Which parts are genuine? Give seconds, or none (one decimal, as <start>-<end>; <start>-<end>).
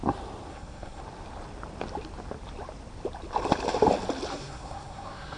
0.0-0.5; 1.0-4.3